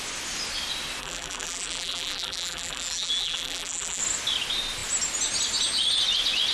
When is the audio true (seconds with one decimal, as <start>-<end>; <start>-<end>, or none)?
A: 0.0-1.0; 4.0-6.5